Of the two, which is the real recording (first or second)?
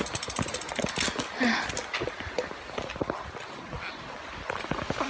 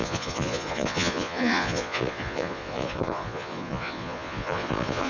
first